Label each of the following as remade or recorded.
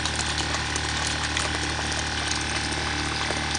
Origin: recorded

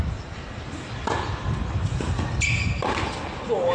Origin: recorded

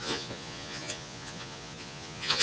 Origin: remade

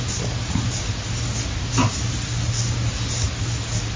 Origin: recorded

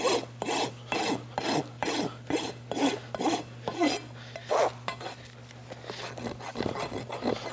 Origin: recorded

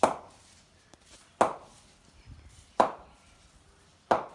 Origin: recorded